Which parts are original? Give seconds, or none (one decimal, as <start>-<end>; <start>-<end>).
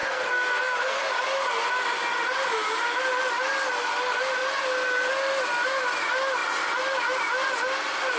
1.0-8.2